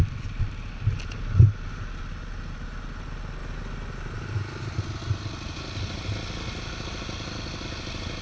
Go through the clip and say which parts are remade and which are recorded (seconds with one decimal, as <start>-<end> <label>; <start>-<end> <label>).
0.0-8.2 recorded